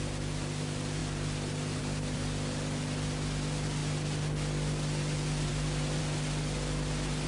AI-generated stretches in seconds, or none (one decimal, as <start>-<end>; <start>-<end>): 0.0-1.0; 1.8-3.8; 4.7-7.3